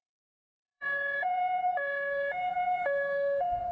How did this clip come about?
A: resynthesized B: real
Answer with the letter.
A